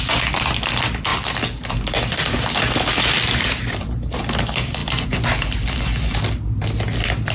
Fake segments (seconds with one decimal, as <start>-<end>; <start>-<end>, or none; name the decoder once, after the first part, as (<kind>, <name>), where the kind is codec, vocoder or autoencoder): none